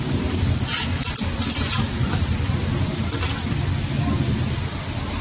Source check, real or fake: real